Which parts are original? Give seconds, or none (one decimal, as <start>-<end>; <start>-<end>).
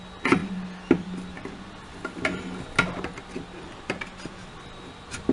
0.0-5.3